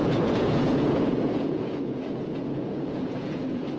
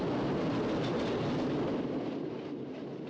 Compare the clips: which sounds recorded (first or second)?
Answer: second